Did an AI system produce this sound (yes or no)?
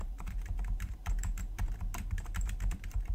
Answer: yes